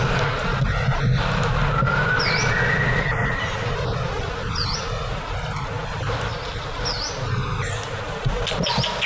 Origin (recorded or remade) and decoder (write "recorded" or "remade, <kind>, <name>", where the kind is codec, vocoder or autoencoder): recorded